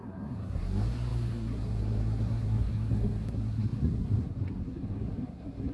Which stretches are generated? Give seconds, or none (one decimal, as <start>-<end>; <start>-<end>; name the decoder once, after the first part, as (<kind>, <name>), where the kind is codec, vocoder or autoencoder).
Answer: 0.0-5.7 (codec, SNAC)